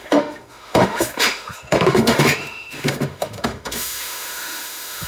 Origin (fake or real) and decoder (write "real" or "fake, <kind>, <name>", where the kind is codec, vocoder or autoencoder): fake, autoencoder, DAC-VAE